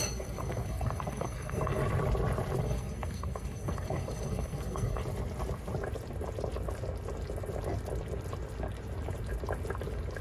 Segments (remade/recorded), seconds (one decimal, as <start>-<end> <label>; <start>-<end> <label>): 0.0-1.8 remade; 1.8-2.6 recorded; 2.6-5.0 remade; 5.0-10.2 recorded